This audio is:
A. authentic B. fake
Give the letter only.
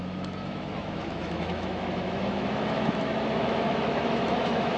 B